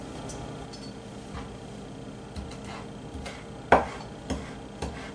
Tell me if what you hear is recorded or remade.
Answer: recorded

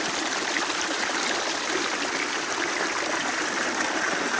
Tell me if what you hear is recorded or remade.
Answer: recorded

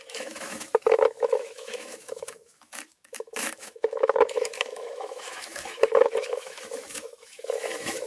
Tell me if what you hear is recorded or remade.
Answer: remade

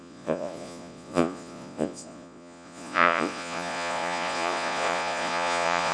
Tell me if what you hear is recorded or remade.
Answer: remade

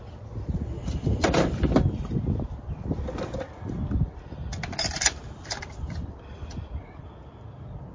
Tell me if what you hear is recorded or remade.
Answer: remade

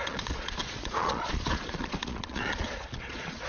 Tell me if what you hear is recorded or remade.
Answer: remade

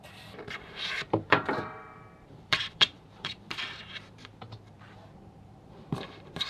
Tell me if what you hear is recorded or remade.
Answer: remade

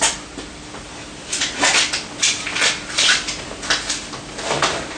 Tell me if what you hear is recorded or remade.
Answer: recorded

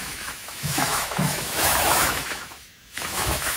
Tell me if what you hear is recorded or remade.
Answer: remade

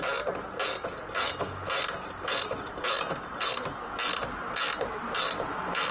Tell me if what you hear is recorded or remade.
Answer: recorded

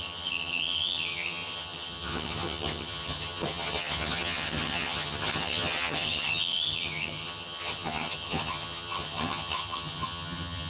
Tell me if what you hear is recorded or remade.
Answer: remade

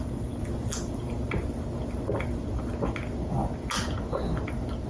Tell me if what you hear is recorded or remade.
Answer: recorded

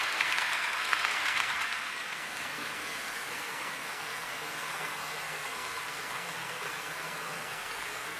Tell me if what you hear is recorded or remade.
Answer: remade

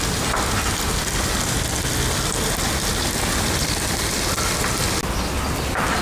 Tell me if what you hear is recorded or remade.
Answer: recorded